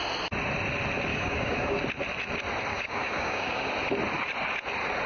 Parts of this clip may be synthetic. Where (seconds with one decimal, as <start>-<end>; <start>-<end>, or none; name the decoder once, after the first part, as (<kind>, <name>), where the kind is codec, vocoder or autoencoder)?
1.1-1.8 (codec, DAC); 2.7-3.7